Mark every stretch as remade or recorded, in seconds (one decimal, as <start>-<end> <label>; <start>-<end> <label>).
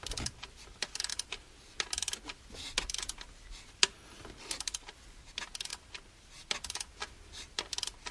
0.0-8.1 recorded